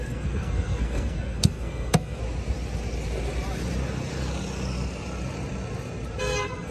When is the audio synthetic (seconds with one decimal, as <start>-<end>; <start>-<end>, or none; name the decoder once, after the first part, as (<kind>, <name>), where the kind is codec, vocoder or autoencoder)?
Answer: 0.0-2.2 (codec, SNAC); 6.2-6.7